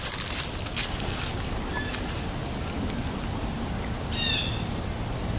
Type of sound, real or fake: real